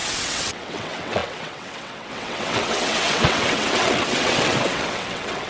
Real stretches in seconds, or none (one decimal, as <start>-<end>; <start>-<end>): none